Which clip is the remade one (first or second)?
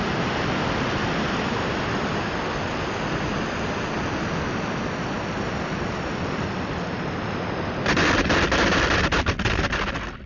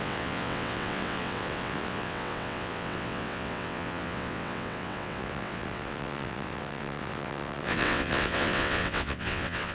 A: second